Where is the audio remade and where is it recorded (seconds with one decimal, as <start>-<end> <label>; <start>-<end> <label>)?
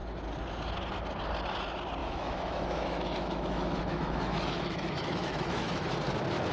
0.0-2.0 recorded; 2.0-5.9 remade; 5.9-6.5 recorded